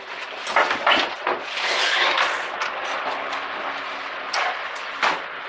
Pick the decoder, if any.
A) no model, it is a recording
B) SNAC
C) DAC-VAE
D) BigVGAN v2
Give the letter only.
A